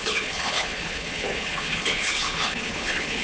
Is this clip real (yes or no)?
no